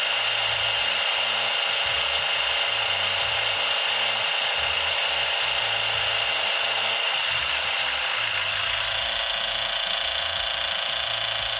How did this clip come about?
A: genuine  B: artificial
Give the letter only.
A